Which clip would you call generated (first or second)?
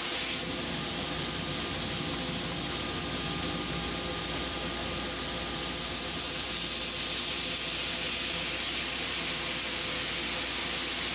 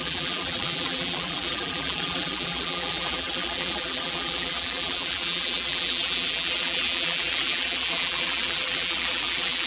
second